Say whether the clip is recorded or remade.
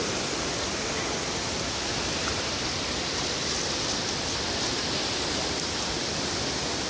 remade